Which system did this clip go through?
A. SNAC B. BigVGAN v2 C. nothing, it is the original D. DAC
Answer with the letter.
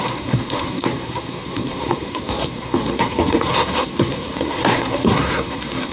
A